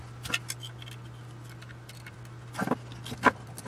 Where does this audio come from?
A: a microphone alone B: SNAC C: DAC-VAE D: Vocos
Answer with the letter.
A